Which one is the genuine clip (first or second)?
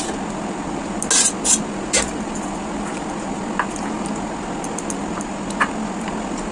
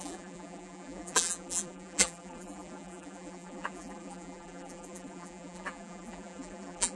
first